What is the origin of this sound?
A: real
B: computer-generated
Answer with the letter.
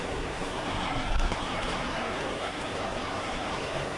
B